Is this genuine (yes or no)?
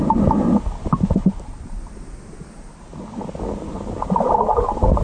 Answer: yes